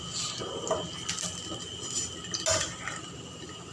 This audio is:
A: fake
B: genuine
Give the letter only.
B